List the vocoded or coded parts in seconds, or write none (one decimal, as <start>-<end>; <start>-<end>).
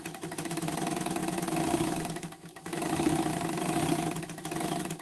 0.0-3.3; 3.9-5.0